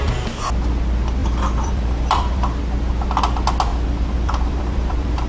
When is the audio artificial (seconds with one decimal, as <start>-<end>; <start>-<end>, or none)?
1.2-2.6; 3.7-5.3